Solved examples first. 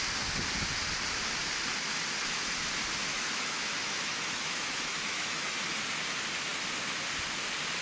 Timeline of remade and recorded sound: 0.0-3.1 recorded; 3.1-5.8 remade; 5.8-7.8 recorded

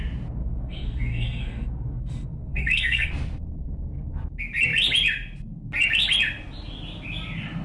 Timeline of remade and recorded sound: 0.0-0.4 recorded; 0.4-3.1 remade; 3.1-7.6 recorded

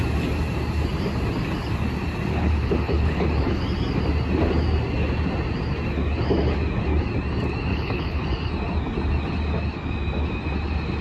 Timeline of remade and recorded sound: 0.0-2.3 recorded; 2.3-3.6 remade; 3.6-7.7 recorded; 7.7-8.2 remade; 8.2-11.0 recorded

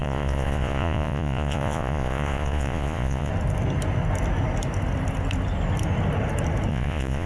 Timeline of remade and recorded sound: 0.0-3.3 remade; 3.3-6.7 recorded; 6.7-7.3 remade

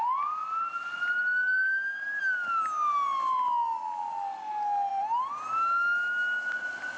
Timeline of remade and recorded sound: 0.0-7.0 recorded

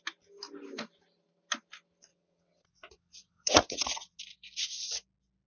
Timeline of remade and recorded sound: 0.0-2.1 recorded; 2.1-4.2 remade; 4.2-5.5 recorded